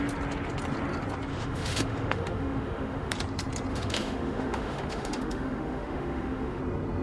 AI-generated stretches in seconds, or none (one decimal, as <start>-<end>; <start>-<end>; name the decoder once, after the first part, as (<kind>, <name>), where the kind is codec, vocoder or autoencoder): 1.3-3.1 (autoencoder, DAC-VAE); 3.7-6.6